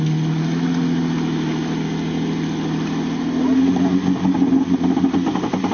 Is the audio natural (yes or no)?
yes